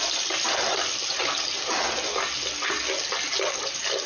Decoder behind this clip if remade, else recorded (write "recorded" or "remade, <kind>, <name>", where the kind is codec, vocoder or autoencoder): recorded